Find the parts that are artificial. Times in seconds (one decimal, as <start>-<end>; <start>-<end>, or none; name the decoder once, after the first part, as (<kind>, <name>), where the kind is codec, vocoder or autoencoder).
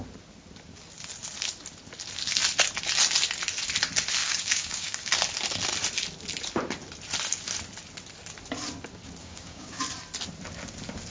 4.2-5.1 (codec, DAC); 9.2-9.8